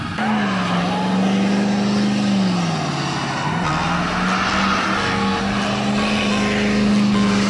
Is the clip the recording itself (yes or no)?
yes